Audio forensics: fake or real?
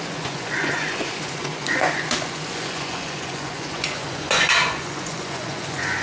fake